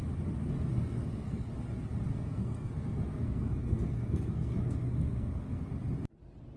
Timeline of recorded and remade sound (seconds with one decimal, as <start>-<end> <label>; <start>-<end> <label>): 0.0-0.7 recorded; 0.7-1.5 remade; 1.5-2.1 recorded; 2.1-5.7 remade; 5.7-6.6 recorded